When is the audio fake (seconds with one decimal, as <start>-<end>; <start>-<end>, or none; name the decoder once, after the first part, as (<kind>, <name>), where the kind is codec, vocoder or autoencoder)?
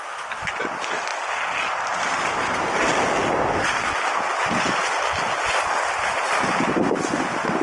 none